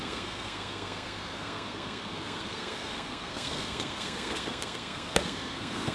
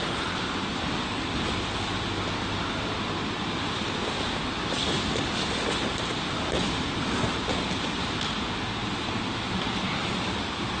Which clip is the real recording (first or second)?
second